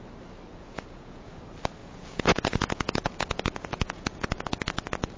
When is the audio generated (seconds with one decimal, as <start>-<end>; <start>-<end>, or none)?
0.5-1.4; 1.8-4.5